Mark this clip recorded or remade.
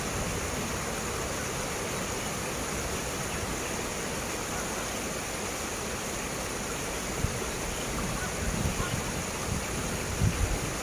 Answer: recorded